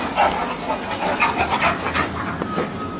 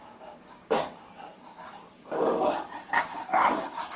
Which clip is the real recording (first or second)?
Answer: first